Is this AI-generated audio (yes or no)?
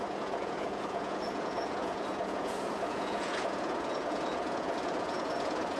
yes